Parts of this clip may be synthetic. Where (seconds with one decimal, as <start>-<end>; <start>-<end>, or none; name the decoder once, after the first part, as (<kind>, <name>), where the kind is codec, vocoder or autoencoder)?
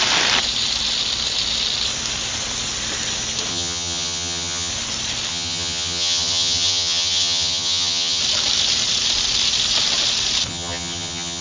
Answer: 3.5-4.7 (vocoder, HiFi-GAN); 5.3-8.2; 10.5-11.4